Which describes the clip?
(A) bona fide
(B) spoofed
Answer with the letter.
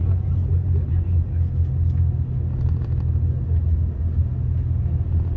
A